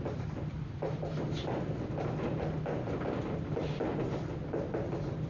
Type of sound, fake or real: real